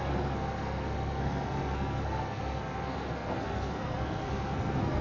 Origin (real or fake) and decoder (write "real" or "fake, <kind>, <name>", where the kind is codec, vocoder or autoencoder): fake, codec, SNAC